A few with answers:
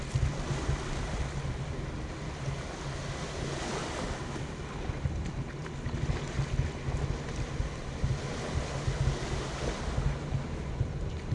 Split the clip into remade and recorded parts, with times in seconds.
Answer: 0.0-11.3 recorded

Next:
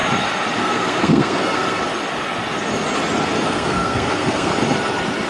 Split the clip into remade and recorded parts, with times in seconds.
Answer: 0.0-0.6 recorded; 0.6-1.8 remade; 1.8-3.5 recorded; 3.5-4.5 remade; 4.5-5.3 recorded

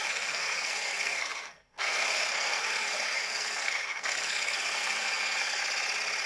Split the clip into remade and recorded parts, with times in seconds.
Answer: 0.0-5.6 remade; 5.6-6.3 recorded

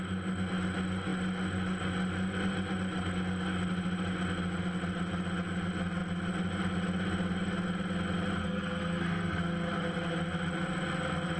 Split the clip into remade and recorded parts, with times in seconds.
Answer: 0.0-8.4 recorded; 8.4-9.4 remade; 9.4-11.4 recorded

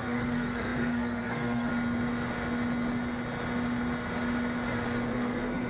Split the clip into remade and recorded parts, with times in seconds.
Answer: 0.0-1.7 remade; 1.7-5.1 recorded; 5.1-5.7 remade

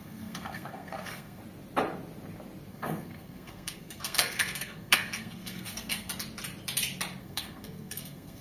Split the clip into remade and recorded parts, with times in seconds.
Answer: 0.0-1.4 remade; 1.4-2.7 recorded; 2.7-6.1 remade; 6.1-7.2 recorded; 7.2-8.4 remade